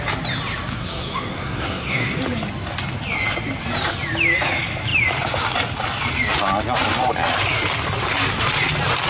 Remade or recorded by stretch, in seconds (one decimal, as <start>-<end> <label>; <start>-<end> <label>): 0.0-0.7 recorded; 0.7-2.2 remade; 2.2-9.1 recorded